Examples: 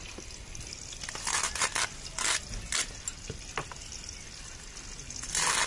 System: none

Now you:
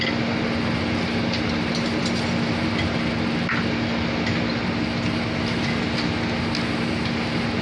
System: none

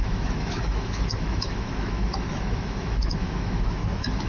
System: autoencoder, DAC-VAE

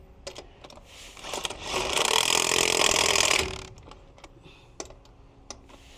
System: none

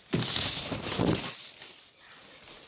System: none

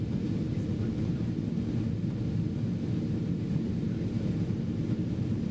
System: none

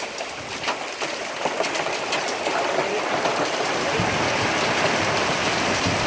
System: none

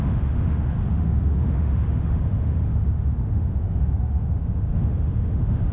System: autoencoder, DAC-VAE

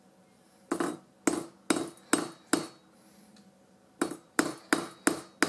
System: none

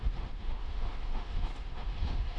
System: autoencoder, DAC-VAE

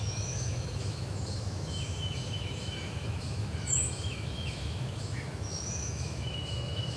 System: autoencoder, DAC-VAE